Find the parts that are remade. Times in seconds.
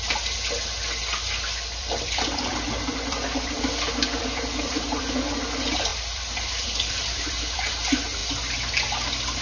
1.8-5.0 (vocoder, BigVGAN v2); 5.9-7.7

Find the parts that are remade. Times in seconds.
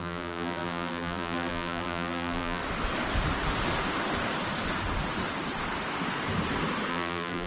0.0-2.6 (vocoder, BigVGAN v2); 6.9-7.5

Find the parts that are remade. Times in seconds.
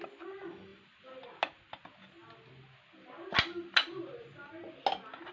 none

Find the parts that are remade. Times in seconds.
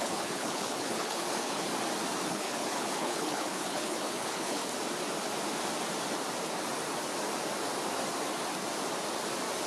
0.0-1.7 (codec, HILCodec); 2.3-4.6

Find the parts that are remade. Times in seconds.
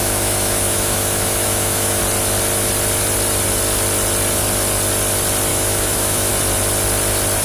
0.0-2.0 (autoencoder, DAC-VAE); 5.5-6.3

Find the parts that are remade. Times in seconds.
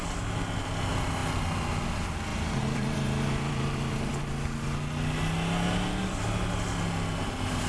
2.3-4.1 (vocoder, BigVGAN v2)